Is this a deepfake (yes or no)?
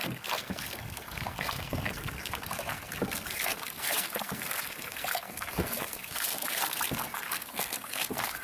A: yes